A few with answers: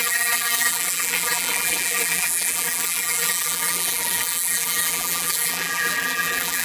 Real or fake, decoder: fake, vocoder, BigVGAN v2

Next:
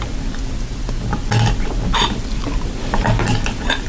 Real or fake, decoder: real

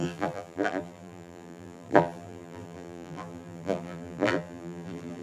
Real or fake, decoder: fake, vocoder, BigVGAN v2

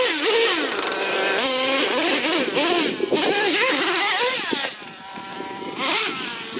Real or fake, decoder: fake, vocoder, BigVGAN v2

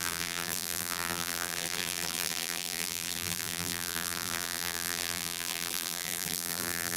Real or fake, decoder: fake, vocoder, BigVGAN v2